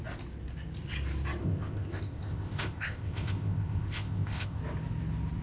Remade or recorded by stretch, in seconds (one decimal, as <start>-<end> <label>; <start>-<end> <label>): 0.0-1.4 recorded; 1.4-4.6 remade; 4.6-5.4 recorded